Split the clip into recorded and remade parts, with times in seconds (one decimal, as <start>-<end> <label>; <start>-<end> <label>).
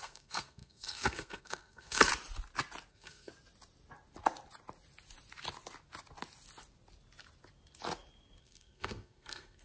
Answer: 0.0-2.1 remade; 2.1-2.9 recorded; 2.9-3.3 remade; 3.3-8.4 recorded; 8.4-9.6 remade